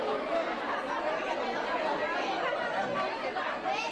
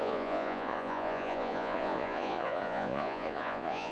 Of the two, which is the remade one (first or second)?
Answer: second